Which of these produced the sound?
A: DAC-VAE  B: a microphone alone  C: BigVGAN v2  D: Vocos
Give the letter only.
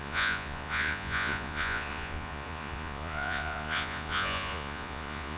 D